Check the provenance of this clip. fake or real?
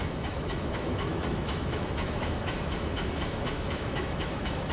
fake